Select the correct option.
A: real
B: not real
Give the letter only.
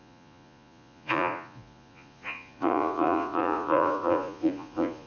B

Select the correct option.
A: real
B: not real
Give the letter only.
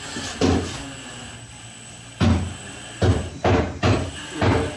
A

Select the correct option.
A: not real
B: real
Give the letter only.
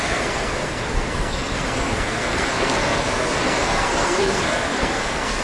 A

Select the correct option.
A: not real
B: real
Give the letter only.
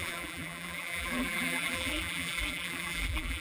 A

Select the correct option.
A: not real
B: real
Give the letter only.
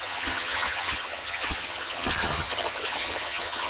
A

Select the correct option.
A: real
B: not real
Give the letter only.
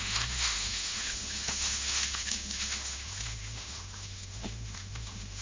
B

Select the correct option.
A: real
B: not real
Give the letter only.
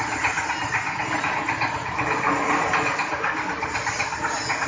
A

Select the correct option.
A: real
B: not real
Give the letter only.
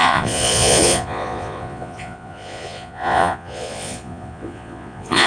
B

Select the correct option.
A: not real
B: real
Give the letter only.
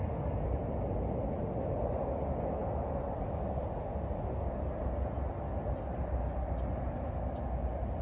B